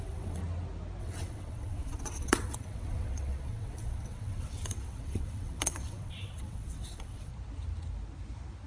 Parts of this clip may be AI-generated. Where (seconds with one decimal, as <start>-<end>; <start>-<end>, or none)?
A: 0.0-0.4; 1.0-7.3